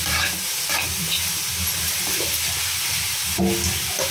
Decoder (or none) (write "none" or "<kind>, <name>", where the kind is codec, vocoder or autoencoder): none